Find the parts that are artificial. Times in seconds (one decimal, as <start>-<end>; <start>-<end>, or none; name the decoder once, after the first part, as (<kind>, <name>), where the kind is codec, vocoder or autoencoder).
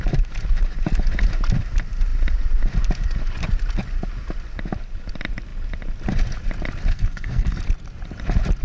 6.9-7.6 (codec, SNAC)